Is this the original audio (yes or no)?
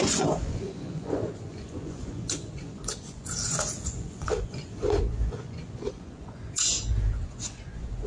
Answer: no